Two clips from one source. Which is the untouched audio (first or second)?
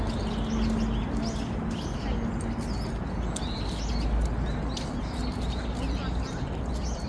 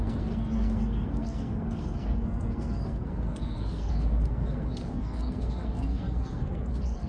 first